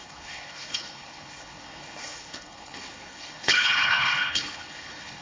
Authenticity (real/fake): fake